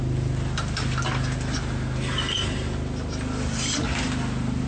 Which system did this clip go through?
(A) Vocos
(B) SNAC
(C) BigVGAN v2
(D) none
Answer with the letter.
D